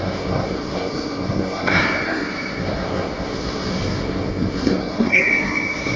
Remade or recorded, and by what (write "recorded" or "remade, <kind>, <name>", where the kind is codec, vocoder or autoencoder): remade, codec, SNAC